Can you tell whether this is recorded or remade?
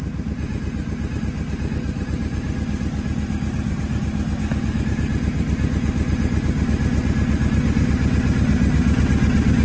recorded